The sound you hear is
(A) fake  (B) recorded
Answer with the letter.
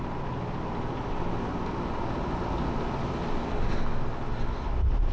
B